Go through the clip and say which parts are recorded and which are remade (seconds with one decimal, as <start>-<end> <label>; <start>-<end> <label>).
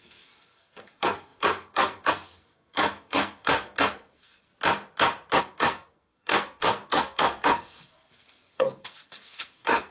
0.0-4.5 remade; 4.5-5.4 recorded; 5.4-9.9 remade